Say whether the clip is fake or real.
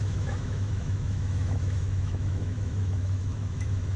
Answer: fake